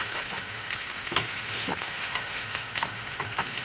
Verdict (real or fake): fake